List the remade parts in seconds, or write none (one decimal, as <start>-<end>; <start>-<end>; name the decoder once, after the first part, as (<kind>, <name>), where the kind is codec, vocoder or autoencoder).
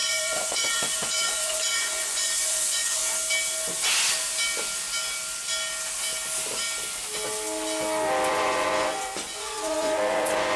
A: 0.0-3.0 (vocoder, Vocos); 8.3-10.6